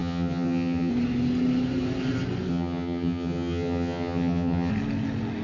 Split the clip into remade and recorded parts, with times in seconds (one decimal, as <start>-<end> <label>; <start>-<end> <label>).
0.0-0.9 remade; 0.9-2.5 recorded; 2.5-4.7 remade; 4.7-5.4 recorded